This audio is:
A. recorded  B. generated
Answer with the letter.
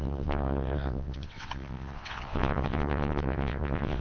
B